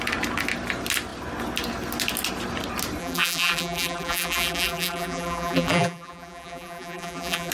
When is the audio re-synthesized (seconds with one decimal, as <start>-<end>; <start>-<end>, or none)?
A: 3.0-7.5